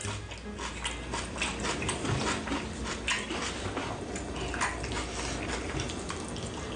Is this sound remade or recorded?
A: recorded